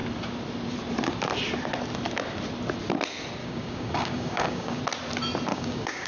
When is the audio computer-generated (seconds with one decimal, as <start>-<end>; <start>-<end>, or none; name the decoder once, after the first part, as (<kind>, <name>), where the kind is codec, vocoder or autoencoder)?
3.4-4.8 (codec, DAC); 5.5-6.1